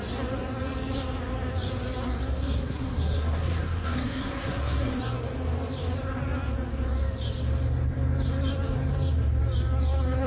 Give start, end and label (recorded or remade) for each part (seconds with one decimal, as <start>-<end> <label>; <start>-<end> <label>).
0.0-2.4 recorded; 2.4-5.0 remade; 5.0-10.3 recorded